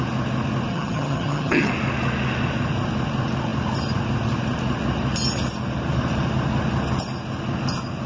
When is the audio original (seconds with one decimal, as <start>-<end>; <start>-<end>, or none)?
0.0-0.7; 1.7-8.1